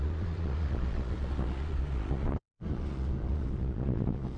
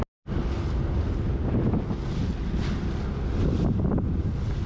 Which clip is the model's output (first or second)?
first